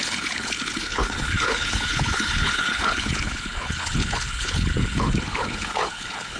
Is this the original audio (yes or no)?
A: no